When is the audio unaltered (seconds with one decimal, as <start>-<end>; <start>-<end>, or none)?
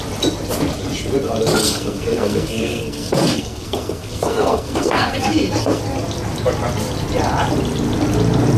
0.0-1.6; 5.8-8.6